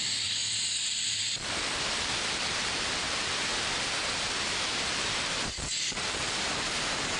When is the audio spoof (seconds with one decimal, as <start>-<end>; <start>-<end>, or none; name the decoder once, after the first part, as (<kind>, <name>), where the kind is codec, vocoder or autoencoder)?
0.0-7.2 (vocoder, BigVGAN v2)